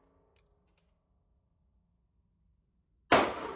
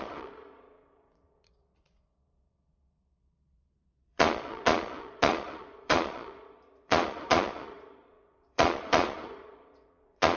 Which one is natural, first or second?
first